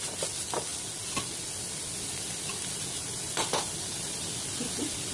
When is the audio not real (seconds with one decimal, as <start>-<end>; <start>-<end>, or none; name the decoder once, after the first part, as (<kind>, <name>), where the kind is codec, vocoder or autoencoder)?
none